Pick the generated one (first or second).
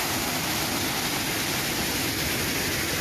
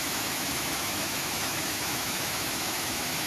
second